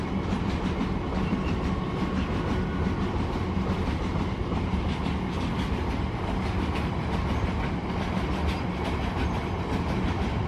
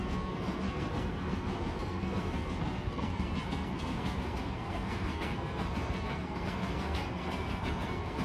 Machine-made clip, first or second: second